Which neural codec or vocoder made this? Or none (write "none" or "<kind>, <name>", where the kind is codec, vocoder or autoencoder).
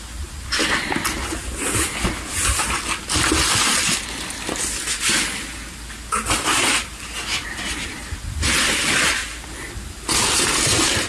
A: none